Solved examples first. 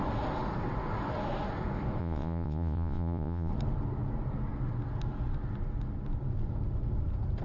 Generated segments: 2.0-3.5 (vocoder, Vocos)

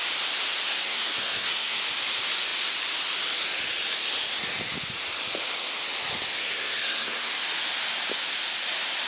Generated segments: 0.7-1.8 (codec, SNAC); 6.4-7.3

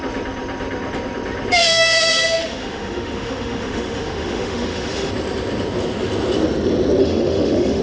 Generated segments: 1.6-5.1 (autoencoder, DAC-VAE); 7.0-7.8

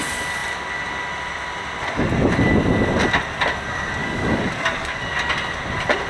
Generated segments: 4.0-4.9 (codec, DAC)